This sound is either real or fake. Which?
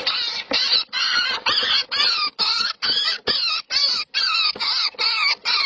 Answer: real